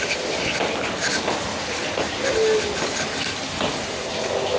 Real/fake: real